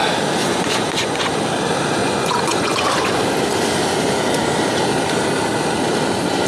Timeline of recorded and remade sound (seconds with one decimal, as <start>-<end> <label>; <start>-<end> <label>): 0.0-0.4 recorded; 0.4-1.3 remade; 1.3-2.0 recorded; 2.0-3.2 remade; 3.2-6.5 recorded